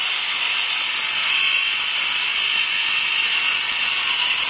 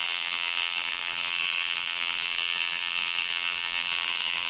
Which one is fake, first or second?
second